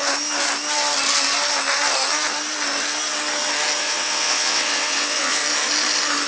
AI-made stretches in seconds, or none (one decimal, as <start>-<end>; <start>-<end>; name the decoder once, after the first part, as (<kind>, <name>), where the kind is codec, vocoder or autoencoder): 3.8-5.4 (vocoder, WaveNeXt)